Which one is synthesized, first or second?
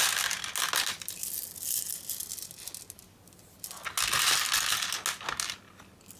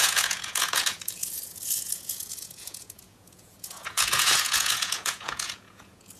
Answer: second